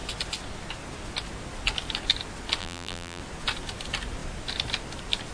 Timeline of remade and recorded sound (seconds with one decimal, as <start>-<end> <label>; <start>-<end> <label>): 0.0-2.6 recorded; 2.6-3.2 remade; 3.2-5.3 recorded